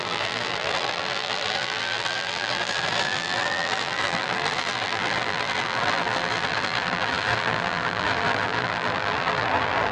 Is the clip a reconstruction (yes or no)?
yes